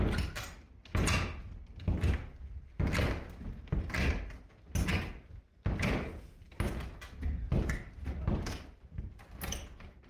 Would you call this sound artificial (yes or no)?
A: no